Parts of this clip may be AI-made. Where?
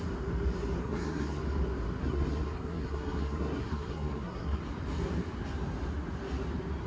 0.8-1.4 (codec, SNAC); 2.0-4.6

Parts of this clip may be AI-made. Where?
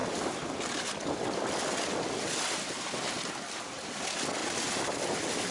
4.4-4.9 (vocoder, BigVGAN v2)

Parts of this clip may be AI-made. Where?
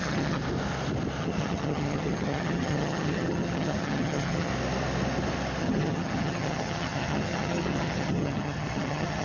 0.0-0.4 (vocoder, HiFi-GAN); 1.2-4.5; 5.6-9.2